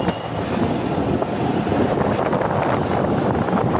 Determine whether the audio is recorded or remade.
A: recorded